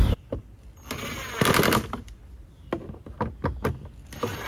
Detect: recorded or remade recorded